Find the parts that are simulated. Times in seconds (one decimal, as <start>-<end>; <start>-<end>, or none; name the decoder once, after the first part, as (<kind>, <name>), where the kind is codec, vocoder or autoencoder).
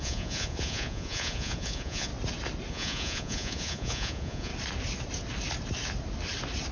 0.0-2.1 (vocoder, Vocos); 2.7-4.5